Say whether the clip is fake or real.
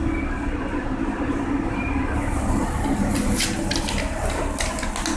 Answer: real